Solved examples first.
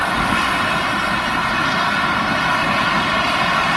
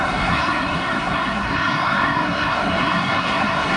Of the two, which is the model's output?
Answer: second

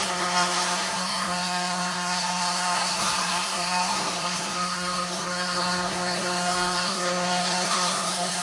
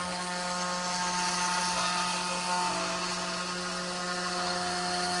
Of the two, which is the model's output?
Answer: first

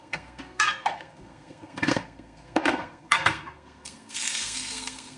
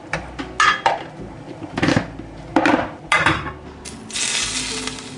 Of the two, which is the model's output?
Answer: first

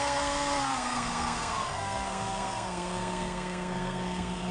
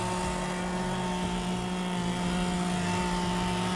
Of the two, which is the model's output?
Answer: first